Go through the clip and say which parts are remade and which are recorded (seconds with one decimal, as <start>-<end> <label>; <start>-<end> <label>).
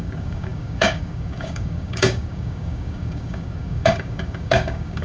0.0-5.0 remade